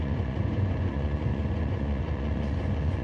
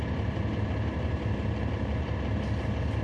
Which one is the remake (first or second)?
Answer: first